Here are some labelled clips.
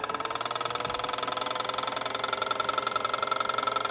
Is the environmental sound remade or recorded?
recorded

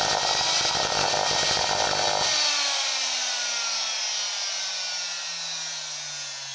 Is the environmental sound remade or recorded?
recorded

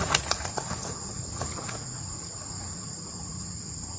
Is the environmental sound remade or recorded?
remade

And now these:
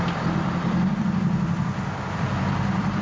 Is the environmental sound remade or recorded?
remade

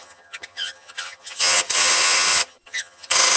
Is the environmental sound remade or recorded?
remade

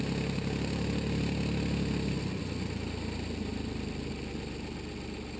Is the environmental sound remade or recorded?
recorded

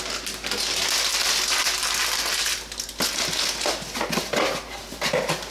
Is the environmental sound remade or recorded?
recorded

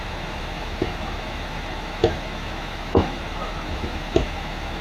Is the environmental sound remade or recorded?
remade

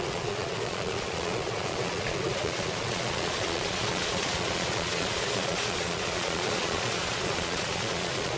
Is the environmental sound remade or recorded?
remade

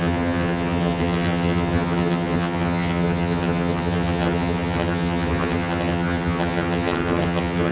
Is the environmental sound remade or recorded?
remade